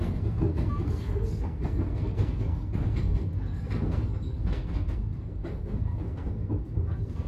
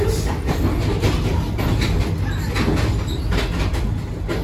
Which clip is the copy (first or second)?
first